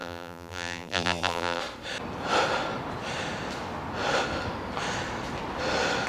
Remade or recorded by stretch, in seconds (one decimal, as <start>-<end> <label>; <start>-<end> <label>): 0.0-1.6 remade; 1.6-6.1 recorded